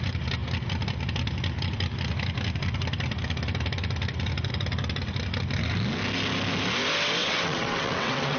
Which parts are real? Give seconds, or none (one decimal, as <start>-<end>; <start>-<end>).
0.0-7.2